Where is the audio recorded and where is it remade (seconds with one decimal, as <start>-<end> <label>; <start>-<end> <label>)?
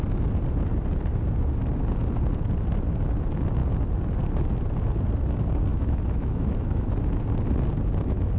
0.0-5.7 recorded; 5.7-7.1 remade; 7.1-8.4 recorded